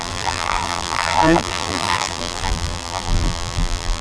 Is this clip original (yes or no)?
no